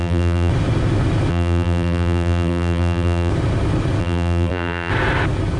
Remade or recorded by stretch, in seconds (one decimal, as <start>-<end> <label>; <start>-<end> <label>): 0.0-0.5 remade; 0.5-1.3 recorded; 1.3-3.3 remade; 3.3-4.0 recorded; 4.0-4.9 remade; 4.9-5.6 recorded